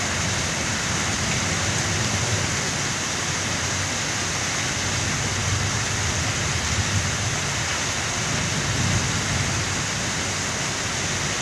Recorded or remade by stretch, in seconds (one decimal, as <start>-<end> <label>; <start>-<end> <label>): 0.0-11.4 recorded